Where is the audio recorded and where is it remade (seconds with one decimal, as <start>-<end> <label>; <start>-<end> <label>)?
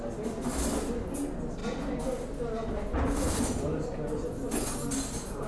0.0-5.5 recorded